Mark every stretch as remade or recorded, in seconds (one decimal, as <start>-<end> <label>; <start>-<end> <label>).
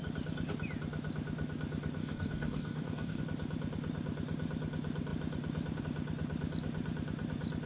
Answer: 0.0-2.0 recorded; 2.0-3.2 remade; 3.2-7.7 recorded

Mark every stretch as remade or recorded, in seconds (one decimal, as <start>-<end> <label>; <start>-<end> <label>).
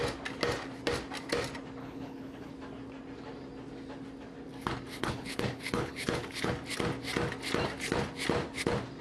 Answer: 0.0-1.8 recorded; 1.8-2.5 remade; 2.5-5.0 recorded; 5.0-6.5 remade; 6.5-9.0 recorded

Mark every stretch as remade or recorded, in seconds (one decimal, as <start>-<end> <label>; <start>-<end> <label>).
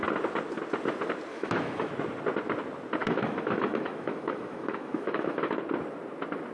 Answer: 0.0-1.3 recorded; 1.3-1.9 remade; 1.9-3.0 recorded; 3.0-5.5 remade; 5.5-6.5 recorded